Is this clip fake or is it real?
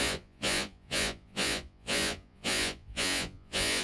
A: fake